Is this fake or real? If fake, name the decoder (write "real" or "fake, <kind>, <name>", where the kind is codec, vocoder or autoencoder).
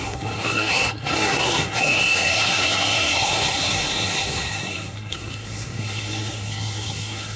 fake, codec, SNAC